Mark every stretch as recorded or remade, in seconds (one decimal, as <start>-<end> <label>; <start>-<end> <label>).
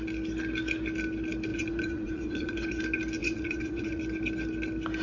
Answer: 0.0-1.5 recorded; 1.5-2.8 remade; 2.8-3.2 recorded; 3.2-4.0 remade; 4.0-5.0 recorded